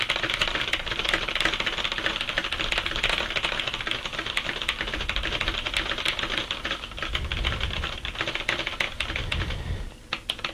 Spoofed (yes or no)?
yes